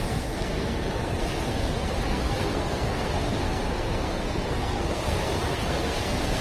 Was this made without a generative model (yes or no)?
no